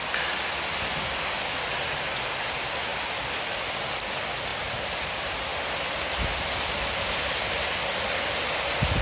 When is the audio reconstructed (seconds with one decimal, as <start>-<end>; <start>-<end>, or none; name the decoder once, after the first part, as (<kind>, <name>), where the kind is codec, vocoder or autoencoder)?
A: 2.9-4.0 (vocoder, BigVGAN v2); 4.5-5.1; 5.5-8.6